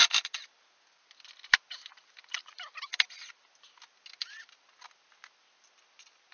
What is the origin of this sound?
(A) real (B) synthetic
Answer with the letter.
A